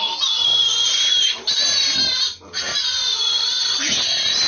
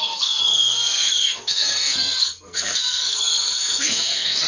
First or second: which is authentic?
first